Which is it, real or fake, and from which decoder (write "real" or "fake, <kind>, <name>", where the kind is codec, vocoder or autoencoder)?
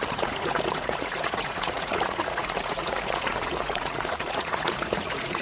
fake, vocoder, Vocos